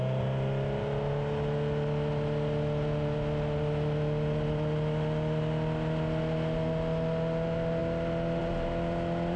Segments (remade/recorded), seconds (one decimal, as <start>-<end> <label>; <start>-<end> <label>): 0.0-9.4 recorded